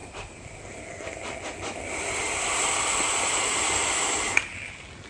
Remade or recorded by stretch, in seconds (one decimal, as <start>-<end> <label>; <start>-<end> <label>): 0.0-5.1 recorded